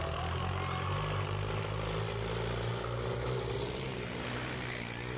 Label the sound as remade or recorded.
recorded